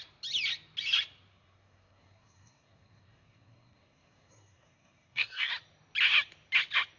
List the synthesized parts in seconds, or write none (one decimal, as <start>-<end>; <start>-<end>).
1.3-5.5